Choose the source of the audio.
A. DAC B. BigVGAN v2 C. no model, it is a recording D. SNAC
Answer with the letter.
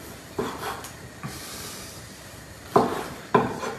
C